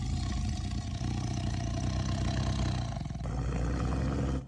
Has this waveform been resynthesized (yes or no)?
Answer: no